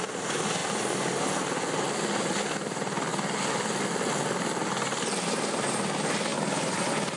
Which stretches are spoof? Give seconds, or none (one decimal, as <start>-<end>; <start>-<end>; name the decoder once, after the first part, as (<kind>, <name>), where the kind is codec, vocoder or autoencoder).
6.3-6.8 (vocoder, BigVGAN v2)